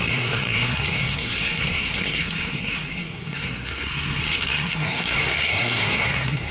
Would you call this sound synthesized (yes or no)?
yes